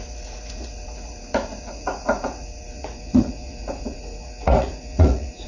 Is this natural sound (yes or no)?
no